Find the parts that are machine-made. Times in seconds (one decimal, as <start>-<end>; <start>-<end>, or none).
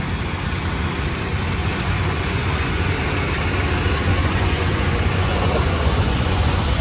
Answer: 1.6-2.9; 4.2-6.8